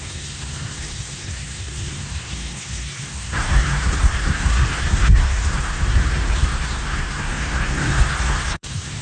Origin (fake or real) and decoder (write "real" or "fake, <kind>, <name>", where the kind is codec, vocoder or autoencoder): fake, codec, SNAC